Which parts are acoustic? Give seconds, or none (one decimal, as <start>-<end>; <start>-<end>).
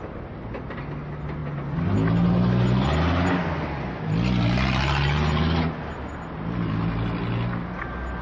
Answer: 0.0-8.2